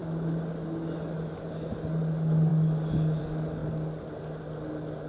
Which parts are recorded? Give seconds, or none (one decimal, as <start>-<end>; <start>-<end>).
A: 0.0-5.1